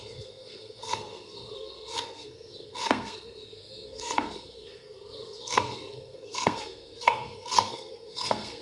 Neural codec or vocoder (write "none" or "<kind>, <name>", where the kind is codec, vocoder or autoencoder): codec, SNAC